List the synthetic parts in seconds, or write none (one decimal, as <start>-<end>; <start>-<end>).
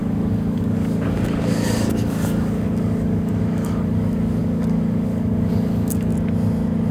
0.0-6.1